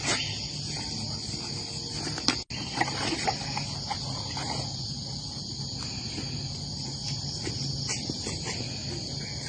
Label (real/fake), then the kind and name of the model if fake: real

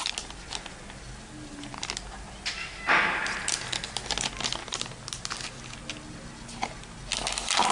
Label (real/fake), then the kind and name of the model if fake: real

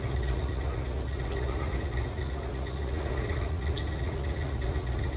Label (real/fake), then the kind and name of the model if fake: fake, vocoder, Vocos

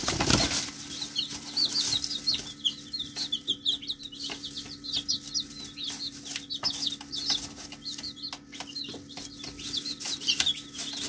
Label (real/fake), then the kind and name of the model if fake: real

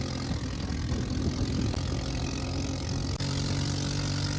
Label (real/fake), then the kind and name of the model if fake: real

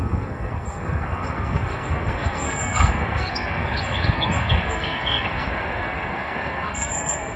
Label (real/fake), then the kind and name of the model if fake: fake, codec, SNAC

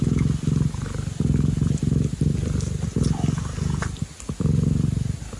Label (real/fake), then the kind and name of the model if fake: real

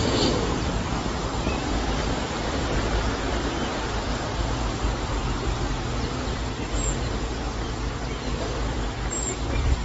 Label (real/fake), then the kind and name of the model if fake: real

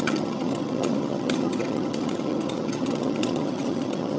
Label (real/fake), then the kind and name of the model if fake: fake, vocoder, HiFi-GAN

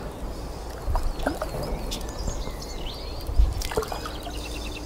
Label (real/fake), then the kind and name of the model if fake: real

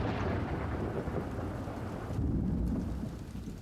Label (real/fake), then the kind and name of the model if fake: real